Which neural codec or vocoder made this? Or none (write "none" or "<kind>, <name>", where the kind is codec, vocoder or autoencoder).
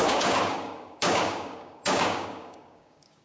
codec, DAC